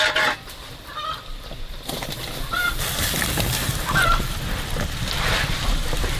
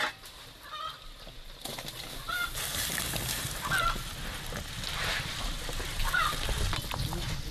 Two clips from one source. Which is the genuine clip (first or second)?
second